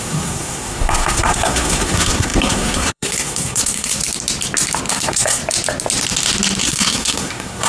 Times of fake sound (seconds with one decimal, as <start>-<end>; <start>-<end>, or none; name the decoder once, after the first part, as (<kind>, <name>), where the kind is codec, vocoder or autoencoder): 0.0-4.0 (codec, SNAC); 4.9-5.4; 6.6-7.7